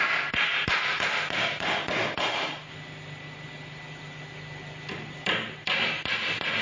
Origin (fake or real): real